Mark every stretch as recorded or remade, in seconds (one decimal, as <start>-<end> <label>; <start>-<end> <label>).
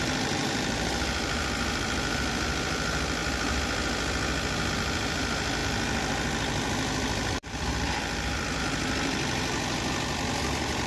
0.0-3.2 remade; 3.2-4.7 recorded; 4.7-10.9 remade